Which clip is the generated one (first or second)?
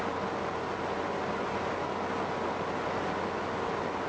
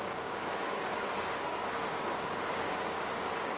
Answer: second